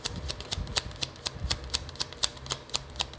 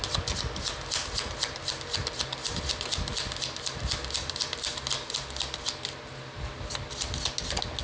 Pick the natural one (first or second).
second